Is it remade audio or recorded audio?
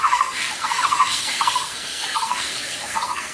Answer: remade